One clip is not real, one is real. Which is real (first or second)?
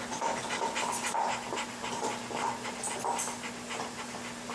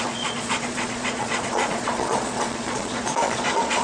first